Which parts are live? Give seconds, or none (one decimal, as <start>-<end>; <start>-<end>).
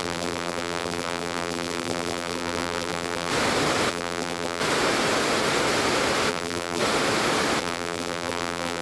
3.3-3.9; 4.6-6.3; 6.8-7.6